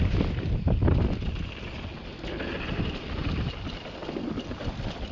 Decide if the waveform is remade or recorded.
recorded